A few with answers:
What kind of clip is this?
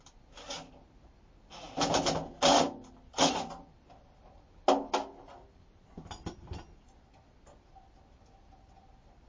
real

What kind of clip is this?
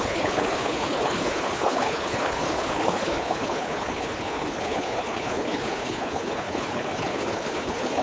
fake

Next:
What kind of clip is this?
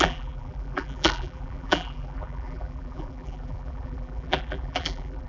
fake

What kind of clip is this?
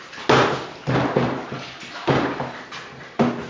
real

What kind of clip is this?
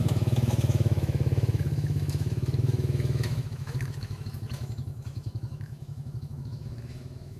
fake